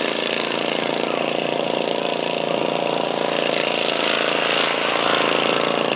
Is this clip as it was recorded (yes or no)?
yes